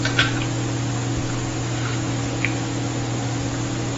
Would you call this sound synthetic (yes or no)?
no